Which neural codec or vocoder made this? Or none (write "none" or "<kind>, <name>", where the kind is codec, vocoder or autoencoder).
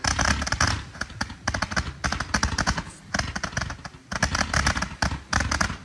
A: none